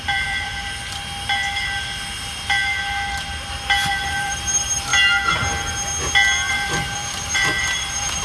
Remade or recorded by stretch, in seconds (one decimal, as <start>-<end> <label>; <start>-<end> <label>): 0.0-0.5 remade; 0.5-3.9 recorded; 3.9-4.9 remade; 4.9-6.5 recorded; 6.5-8.2 remade